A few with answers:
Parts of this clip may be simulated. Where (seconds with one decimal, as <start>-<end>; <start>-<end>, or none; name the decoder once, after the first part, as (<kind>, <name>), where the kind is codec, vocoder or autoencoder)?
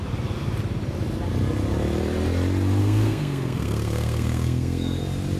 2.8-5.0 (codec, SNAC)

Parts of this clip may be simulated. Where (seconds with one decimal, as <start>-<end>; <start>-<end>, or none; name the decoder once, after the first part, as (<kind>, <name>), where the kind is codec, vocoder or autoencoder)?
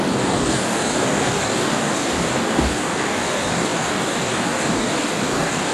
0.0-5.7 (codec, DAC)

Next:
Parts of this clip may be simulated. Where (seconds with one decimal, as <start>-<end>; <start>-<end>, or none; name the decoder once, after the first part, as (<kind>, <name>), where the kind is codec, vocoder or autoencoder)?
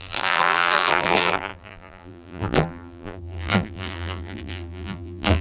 0.0-5.4 (vocoder, BigVGAN v2)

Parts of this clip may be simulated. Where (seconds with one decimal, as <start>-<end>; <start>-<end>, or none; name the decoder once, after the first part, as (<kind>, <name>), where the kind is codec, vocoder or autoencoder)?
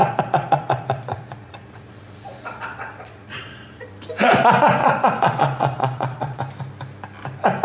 0.0-3.9 (vocoder, Vocos); 4.8-6.4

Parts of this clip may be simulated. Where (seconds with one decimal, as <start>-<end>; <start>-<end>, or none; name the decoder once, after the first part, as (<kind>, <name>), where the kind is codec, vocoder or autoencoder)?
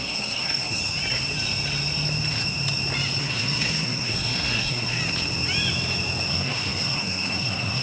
0.0-0.8 (codec, SNAC); 3.2-5.0; 6.3-7.8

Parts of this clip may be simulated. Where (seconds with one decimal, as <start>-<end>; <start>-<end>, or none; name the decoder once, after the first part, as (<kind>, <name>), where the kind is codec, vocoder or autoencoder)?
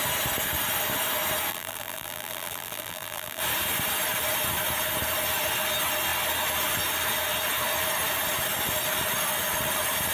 1.5-3.4 (vocoder, BigVGAN v2)